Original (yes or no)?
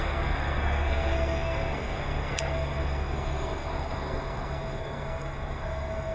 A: no